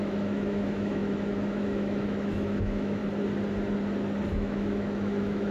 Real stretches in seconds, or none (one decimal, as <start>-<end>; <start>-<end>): 3.0-4.3